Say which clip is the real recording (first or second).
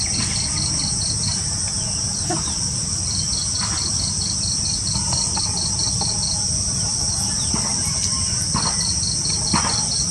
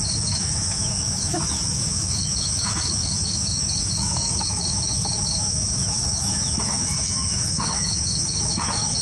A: first